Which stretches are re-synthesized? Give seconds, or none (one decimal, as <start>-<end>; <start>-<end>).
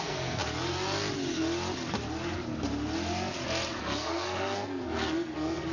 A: 0.0-0.4; 3.8-5.7